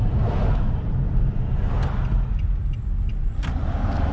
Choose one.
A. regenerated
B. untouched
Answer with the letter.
B